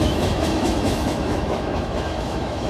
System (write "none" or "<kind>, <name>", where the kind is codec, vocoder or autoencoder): autoencoder, DAC-VAE